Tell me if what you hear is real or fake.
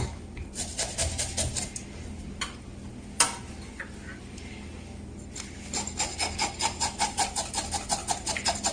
real